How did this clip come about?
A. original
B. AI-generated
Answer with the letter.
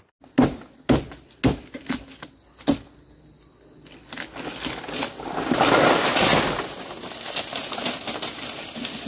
A